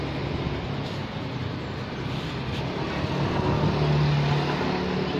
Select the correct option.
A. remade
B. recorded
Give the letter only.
B